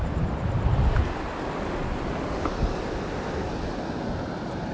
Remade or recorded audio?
recorded